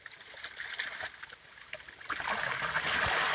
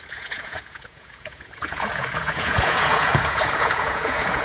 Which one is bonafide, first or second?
first